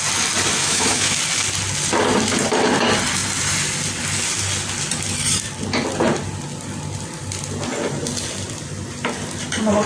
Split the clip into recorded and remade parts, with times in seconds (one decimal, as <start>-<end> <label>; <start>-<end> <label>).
0.0-0.6 recorded; 0.6-1.2 remade; 1.2-9.9 recorded